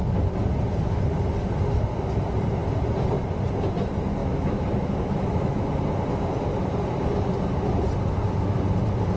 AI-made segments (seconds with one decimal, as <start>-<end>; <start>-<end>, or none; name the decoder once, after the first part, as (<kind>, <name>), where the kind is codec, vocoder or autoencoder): 4.2-5.6 (autoencoder, DAC-VAE)